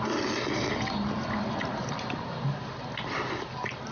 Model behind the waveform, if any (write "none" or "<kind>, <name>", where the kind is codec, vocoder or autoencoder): none